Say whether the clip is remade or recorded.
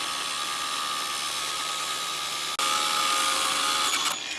recorded